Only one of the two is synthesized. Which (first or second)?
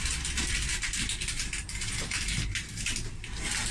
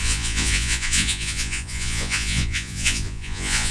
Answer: second